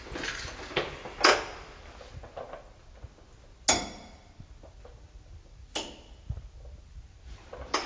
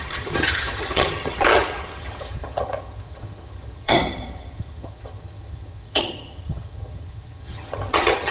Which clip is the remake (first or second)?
second